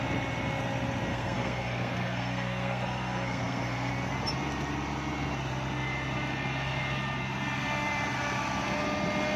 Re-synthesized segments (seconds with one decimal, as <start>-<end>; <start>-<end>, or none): 1.1-3.9